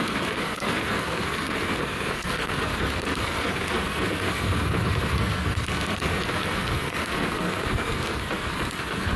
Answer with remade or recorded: remade